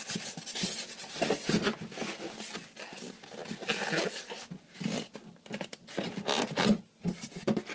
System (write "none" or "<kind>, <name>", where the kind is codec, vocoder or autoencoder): none